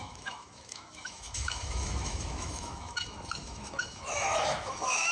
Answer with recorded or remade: remade